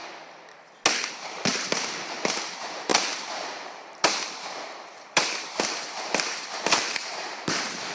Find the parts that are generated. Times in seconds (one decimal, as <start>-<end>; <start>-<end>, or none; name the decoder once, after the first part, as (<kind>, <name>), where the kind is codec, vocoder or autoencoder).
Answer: 1.1-7.9 (vocoder, BigVGAN v2)